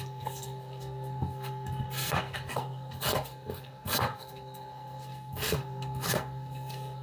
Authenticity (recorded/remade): remade